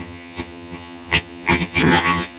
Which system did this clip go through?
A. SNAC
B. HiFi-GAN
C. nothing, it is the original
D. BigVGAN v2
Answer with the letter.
B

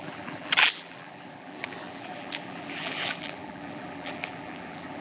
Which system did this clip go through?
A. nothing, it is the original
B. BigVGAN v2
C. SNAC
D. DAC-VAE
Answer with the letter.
B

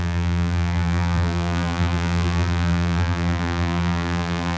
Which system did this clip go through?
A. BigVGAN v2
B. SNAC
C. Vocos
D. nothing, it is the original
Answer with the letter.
A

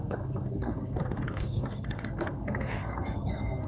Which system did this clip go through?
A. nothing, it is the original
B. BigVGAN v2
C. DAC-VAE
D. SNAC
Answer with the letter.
D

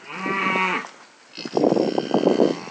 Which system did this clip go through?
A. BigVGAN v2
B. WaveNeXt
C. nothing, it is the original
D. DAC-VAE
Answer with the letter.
C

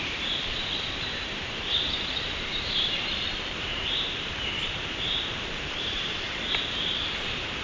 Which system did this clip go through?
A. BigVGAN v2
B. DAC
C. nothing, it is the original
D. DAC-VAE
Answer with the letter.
A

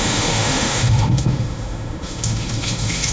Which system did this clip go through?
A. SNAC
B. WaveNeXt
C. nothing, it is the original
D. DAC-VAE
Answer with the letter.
D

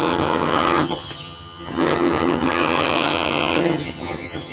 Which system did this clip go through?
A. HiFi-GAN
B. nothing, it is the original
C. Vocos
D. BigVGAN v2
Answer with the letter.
A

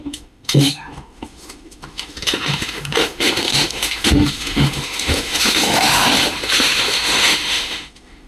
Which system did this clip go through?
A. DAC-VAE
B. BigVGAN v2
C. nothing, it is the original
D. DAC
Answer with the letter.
A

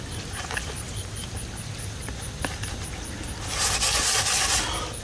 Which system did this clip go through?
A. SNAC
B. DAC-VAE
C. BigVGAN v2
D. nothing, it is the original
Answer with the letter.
D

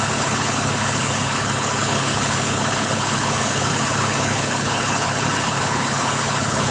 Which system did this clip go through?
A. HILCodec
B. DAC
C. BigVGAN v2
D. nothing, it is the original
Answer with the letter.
A